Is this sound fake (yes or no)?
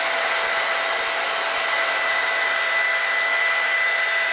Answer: no